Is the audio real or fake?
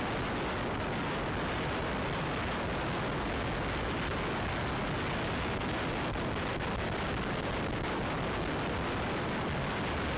real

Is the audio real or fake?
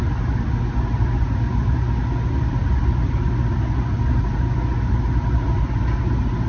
real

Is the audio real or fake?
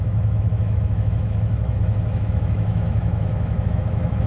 fake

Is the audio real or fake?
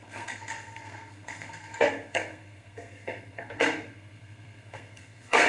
fake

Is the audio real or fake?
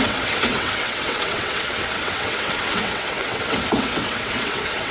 fake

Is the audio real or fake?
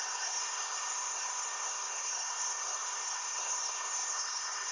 fake